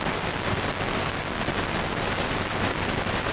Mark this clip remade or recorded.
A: recorded